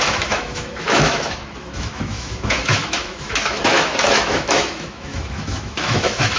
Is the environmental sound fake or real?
fake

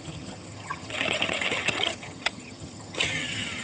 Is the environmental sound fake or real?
fake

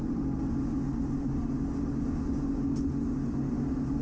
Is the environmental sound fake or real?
real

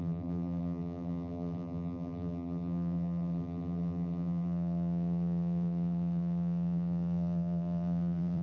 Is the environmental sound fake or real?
fake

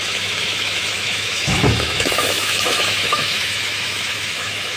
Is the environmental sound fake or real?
fake